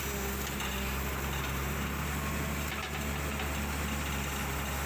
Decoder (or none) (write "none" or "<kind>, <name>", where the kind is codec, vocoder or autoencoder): none